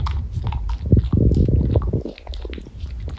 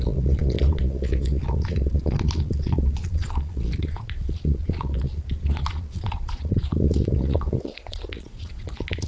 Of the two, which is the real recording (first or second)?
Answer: first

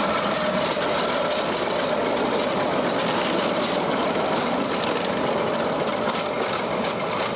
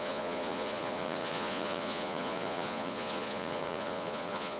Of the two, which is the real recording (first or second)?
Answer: first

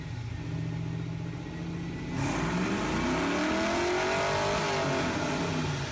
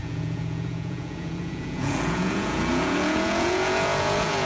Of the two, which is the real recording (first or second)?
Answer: first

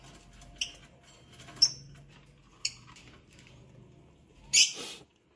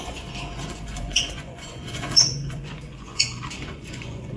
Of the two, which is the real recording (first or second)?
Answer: first